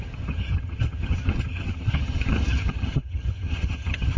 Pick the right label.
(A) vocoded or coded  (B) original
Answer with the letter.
A